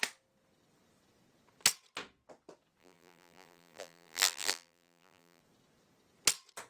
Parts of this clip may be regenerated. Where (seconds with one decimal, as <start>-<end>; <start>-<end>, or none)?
2.8-5.4